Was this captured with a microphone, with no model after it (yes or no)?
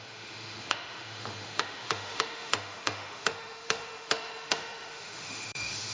no